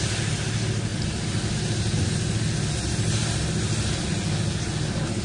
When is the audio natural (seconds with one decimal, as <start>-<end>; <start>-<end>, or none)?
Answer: 0.0-5.2